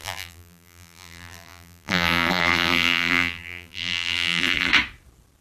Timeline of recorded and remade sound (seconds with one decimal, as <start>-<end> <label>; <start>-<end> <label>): 0.0-4.7 remade; 4.7-5.4 recorded